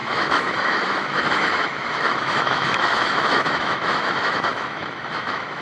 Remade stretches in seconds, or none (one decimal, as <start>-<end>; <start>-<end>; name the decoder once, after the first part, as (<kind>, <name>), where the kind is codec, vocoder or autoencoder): 0.0-5.6 (autoencoder, DAC-VAE)